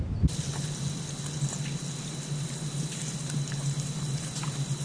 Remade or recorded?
recorded